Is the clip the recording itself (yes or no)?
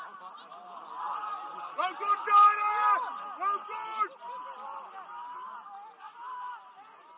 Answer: yes